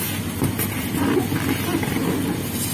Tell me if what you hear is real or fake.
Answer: real